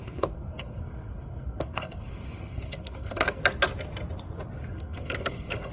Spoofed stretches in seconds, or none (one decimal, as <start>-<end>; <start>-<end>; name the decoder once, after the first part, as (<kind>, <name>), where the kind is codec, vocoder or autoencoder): 0.0-3.4 (codec, SNAC); 4.6-5.7